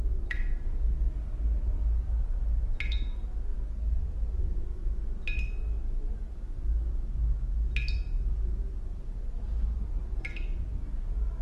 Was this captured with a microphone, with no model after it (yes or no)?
yes